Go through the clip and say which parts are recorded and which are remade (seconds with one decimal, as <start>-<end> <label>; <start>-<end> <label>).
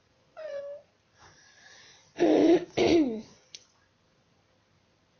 0.0-0.6 remade; 0.6-2.0 recorded; 2.0-4.4 remade; 4.4-5.2 recorded